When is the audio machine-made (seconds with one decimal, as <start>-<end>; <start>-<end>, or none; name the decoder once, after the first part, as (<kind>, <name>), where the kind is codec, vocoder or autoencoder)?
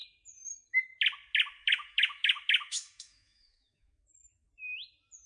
1.6-4.5 (autoencoder, DAC-VAE)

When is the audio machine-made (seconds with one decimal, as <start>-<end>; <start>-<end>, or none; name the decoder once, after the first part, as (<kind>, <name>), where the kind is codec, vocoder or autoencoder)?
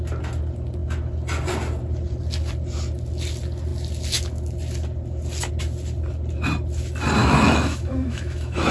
7.2-8.7 (autoencoder, DAC-VAE)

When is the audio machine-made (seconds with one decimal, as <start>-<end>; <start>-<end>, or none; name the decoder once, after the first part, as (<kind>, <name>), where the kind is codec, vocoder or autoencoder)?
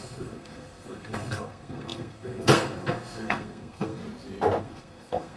0.0-4.0 (codec, SNAC); 4.6-5.4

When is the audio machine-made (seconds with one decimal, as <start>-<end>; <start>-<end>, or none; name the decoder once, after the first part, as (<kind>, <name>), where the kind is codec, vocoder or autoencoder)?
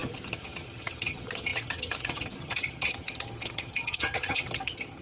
0.0-5.0 (vocoder, HiFi-GAN)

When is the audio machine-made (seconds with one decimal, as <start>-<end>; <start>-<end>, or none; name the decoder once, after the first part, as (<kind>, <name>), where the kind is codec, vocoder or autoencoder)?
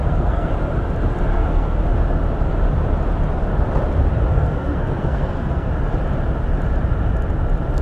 0.0-0.5 (codec, SNAC); 1.3-1.8; 4.3-5.7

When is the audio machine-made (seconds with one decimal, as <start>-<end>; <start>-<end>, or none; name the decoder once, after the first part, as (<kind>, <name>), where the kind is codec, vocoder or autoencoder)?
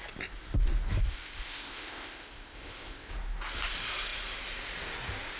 1.0-3.1 (codec, ZipCodec)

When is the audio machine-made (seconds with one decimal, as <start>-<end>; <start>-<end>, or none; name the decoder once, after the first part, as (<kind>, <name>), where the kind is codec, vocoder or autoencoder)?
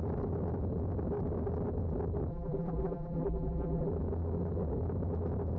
2.3-3.9 (vocoder, BigVGAN v2)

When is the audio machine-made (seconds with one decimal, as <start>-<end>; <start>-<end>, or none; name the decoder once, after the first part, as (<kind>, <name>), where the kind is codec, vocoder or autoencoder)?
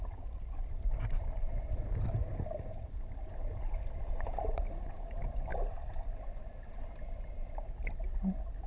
none